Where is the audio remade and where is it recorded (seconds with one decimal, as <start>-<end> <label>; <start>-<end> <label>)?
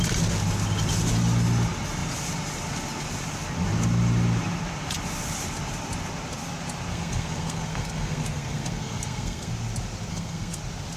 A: 0.0-6.9 recorded; 6.9-9.5 remade; 9.5-10.1 recorded; 10.1-10.6 remade; 10.6-11.0 recorded